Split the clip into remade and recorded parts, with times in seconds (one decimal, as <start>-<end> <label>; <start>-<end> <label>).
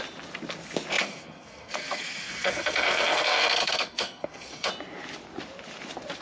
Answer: 0.0-1.0 recorded; 1.0-4.7 remade; 4.7-6.2 recorded